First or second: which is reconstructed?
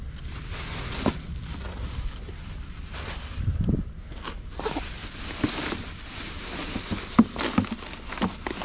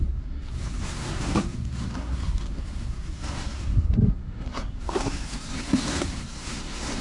second